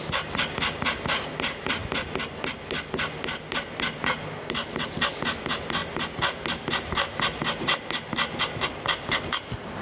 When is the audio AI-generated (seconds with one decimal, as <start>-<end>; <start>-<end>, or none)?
none